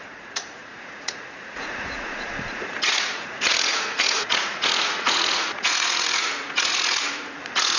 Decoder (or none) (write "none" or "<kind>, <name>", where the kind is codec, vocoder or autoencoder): vocoder, Vocos